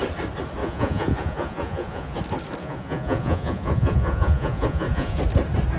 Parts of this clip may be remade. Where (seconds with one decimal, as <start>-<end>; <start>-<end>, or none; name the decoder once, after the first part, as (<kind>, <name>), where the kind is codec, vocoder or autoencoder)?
0.6-2.2 (vocoder, Vocos); 2.6-5.2